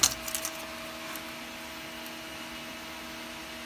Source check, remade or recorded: recorded